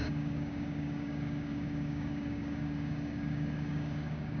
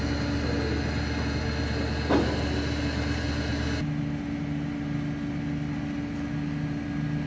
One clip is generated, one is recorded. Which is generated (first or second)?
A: first